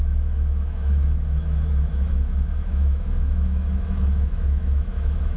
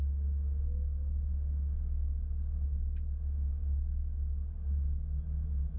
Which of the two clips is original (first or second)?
second